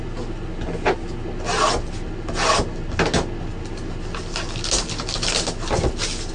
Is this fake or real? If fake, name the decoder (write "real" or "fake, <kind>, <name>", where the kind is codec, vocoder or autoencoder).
real